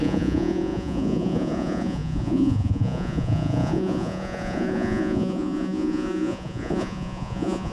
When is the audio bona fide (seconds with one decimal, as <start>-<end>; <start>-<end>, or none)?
none